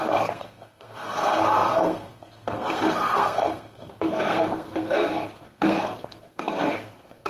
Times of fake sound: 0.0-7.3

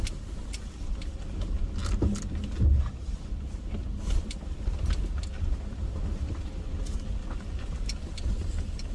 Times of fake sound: none

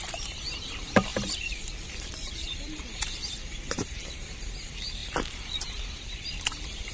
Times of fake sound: 0.0-6.9

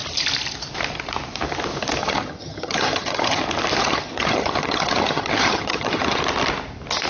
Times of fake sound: 2.0-3.4; 3.8-6.2

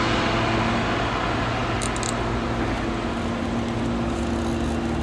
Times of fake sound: none

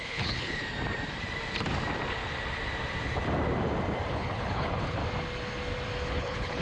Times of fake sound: 0.0-0.6; 4.1-5.0; 6.1-6.6